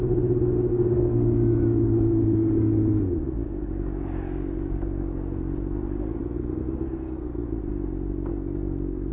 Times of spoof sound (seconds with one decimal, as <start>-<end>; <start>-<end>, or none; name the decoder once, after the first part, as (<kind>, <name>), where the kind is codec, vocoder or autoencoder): 0.7-5.1 (codec, DAC); 8.3-9.1